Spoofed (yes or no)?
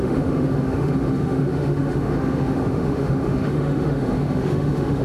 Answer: yes